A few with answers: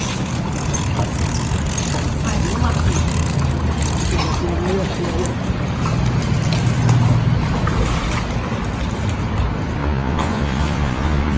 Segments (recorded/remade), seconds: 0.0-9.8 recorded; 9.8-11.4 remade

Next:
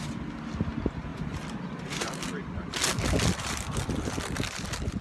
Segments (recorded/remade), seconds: 0.0-1.1 recorded; 1.1-4.1 remade; 4.1-5.0 recorded

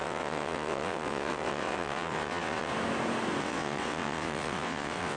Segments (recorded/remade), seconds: 0.0-2.7 remade; 2.7-3.4 recorded; 3.4-5.2 remade

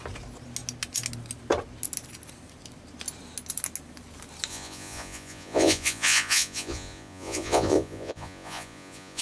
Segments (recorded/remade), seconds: 0.0-4.5 recorded; 4.5-9.2 remade

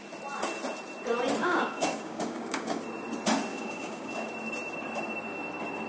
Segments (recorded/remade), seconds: 0.0-1.4 recorded; 1.4-2.8 remade; 2.8-3.5 recorded; 3.5-4.3 remade; 4.3-5.9 recorded